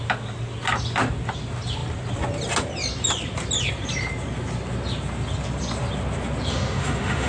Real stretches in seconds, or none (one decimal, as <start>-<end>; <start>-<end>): 0.0-6.5